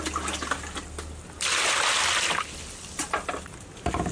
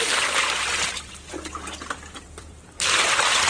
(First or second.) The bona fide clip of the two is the first